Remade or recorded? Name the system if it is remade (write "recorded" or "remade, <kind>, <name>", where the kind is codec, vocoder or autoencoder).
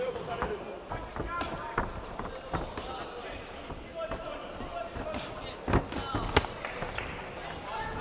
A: recorded